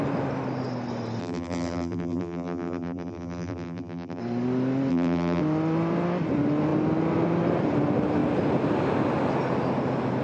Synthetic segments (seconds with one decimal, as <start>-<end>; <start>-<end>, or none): 1.2-4.2; 4.9-5.4